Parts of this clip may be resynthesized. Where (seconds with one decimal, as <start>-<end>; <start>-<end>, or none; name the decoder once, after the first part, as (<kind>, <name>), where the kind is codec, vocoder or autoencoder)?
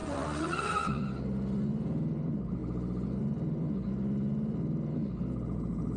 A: 0.0-1.0 (vocoder, Vocos)